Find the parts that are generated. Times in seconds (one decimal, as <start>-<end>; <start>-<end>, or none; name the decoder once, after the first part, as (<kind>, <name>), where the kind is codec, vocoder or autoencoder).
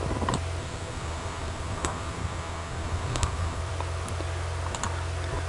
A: 0.6-3.6 (codec, SNAC)